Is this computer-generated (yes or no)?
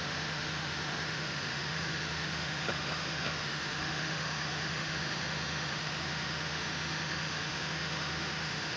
yes